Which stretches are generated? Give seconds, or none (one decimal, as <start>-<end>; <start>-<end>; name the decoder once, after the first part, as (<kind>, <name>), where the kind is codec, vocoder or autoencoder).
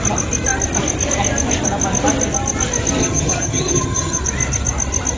3.0-4.2 (vocoder, HiFi-GAN)